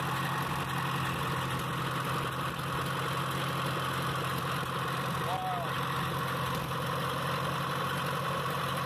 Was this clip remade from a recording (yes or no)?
no